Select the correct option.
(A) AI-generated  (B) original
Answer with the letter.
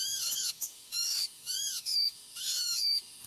A